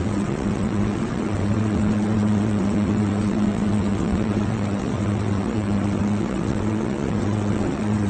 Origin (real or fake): fake